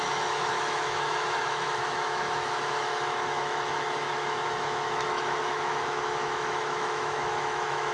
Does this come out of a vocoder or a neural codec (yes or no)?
yes